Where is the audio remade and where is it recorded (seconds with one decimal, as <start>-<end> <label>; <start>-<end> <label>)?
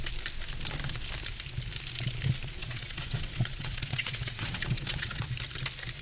0.0-2.6 recorded; 2.6-5.3 remade; 5.3-6.0 recorded